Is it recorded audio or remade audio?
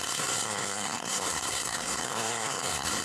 remade